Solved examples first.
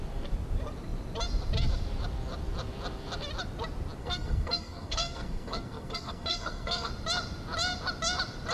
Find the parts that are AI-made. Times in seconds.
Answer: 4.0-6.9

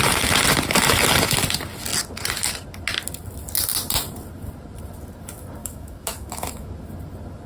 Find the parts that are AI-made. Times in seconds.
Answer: 5.6-6.7

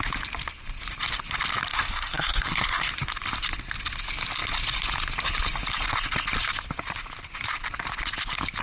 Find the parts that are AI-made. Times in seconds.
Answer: 1.7-2.9